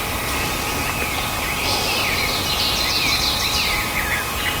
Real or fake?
real